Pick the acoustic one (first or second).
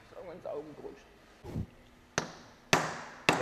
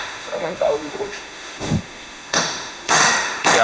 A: first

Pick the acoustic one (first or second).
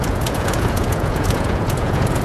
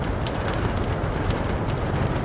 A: second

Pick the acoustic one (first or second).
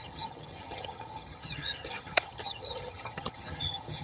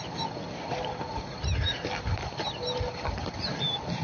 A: second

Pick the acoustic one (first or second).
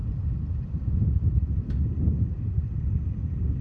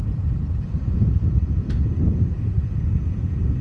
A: first